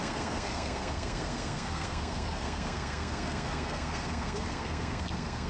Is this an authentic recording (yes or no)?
no